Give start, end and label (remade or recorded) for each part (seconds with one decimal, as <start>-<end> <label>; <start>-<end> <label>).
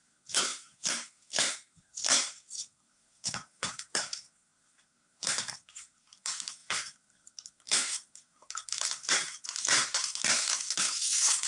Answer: 0.0-11.5 remade